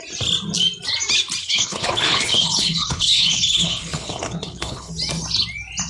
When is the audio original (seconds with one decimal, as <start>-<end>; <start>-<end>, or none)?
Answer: 0.0-1.4; 4.9-5.9